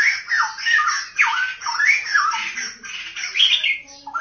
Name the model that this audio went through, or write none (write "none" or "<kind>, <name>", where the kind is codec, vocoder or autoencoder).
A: none